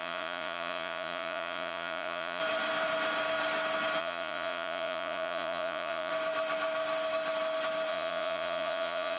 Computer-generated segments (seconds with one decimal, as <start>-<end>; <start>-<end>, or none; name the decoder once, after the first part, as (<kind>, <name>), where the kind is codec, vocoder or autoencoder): 0.0-2.4 (vocoder, Vocos); 4.0-6.1; 7.9-9.2